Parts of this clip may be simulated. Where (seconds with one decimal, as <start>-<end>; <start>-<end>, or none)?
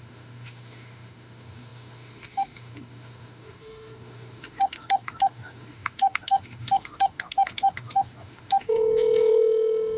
0.0-10.0